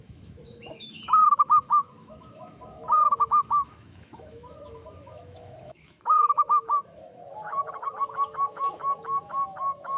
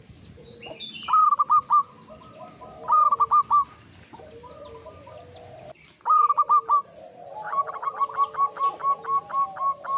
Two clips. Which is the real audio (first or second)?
second